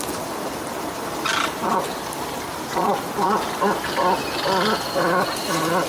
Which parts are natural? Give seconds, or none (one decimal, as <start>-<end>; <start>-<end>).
0.0-5.9